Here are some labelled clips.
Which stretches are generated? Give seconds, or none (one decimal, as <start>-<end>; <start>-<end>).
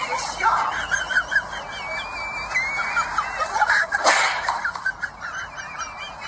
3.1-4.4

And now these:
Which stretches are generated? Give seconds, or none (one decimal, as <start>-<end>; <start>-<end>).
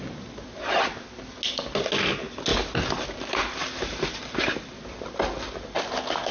none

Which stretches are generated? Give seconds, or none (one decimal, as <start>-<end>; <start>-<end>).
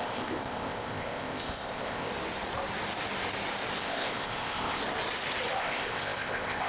0.0-2.1; 3.8-4.8; 5.6-6.7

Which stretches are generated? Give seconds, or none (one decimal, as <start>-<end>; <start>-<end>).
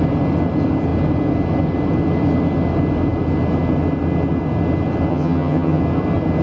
5.1-5.8